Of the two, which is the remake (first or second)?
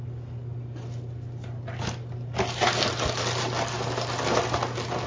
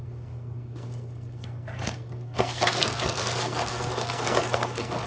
second